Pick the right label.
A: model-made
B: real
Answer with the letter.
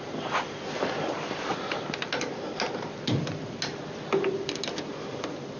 B